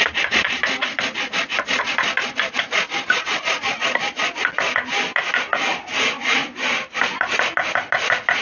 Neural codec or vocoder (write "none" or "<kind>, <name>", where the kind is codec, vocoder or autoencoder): none